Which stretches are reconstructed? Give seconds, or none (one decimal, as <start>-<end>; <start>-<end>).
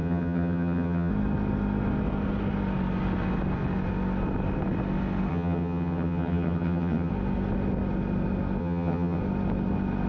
0.0-1.1; 5.3-7.1; 8.6-9.2